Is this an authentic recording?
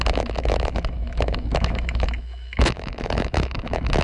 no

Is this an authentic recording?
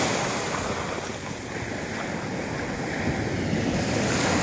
yes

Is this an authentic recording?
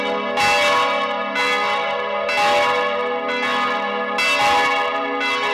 yes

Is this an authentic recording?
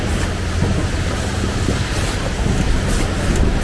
yes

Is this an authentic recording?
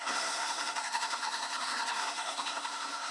no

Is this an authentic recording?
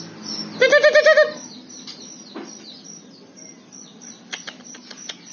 yes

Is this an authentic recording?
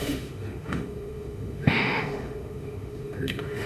no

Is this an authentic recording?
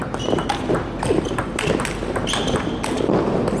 yes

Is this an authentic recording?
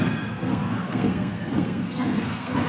no